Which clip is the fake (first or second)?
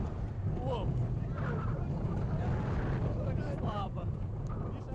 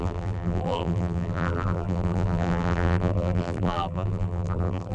second